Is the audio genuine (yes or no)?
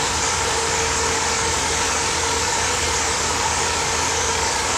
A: no